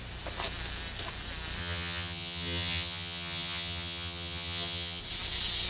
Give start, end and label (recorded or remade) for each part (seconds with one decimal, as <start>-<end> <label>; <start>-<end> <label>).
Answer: 0.0-1.6 recorded; 1.6-5.0 remade; 5.0-5.7 recorded